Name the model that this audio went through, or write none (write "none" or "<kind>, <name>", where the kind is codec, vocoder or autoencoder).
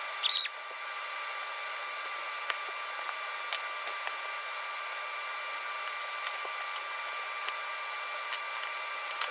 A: none